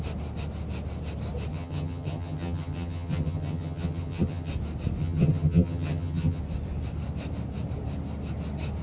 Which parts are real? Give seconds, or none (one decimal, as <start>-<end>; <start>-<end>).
0.0-1.5; 4.5-5.0; 6.4-8.8